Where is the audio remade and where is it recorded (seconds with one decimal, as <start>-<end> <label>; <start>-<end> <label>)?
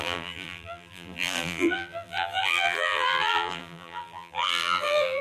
0.0-5.2 remade